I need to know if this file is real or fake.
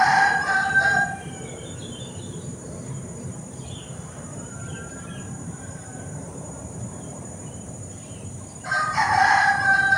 fake